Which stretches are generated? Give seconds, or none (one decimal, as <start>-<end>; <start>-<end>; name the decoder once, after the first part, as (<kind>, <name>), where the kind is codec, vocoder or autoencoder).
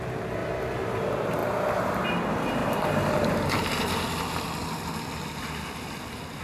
0.4-1.0 (vocoder, BigVGAN v2); 1.4-2.1; 2.6-6.4